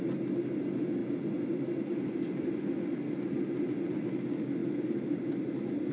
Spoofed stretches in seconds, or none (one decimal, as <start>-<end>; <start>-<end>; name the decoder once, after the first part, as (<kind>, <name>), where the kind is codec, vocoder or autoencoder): none